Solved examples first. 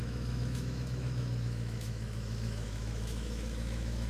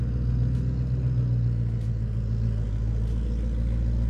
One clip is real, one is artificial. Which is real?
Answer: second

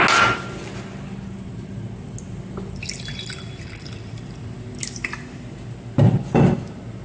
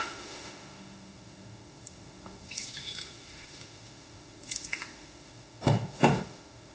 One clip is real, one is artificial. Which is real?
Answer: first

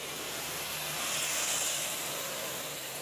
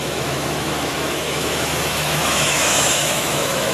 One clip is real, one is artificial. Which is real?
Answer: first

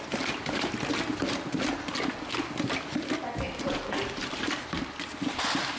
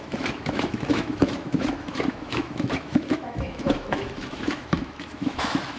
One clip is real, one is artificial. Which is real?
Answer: first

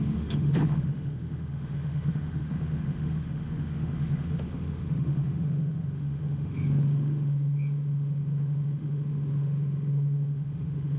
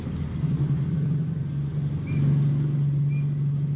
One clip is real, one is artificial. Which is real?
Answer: second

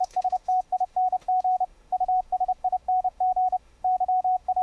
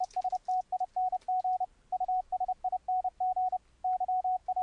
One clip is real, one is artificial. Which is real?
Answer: second